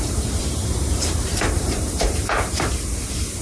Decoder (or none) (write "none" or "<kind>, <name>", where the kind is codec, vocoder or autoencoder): vocoder, BigVGAN v2